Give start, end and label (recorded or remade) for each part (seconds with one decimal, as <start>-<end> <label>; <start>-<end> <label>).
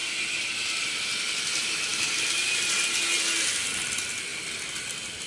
0.0-0.8 remade; 0.8-1.9 recorded; 1.9-2.7 remade; 2.7-4.3 recorded; 4.3-5.3 remade